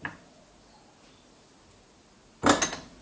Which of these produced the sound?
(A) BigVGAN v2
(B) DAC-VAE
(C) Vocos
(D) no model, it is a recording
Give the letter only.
D